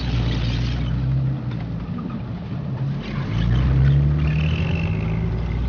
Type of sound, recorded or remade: recorded